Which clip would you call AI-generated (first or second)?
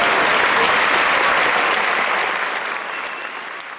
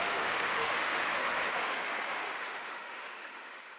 second